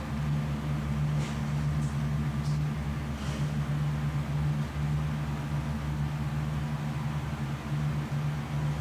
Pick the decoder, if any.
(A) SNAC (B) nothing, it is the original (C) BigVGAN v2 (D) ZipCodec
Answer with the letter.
B